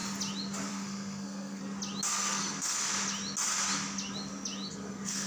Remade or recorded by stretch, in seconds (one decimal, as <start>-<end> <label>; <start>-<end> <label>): 0.0-0.7 recorded; 0.7-1.6 remade; 1.6-2.1 recorded; 2.1-2.9 remade; 2.9-4.7 recorded; 4.7-5.3 remade